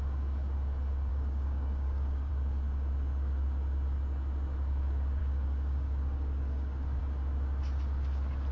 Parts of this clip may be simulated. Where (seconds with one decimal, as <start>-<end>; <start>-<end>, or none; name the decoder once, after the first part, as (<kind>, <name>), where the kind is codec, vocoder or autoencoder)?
1.1-2.3 (codec, DAC); 5.2-7.0